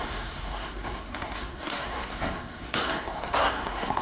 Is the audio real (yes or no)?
no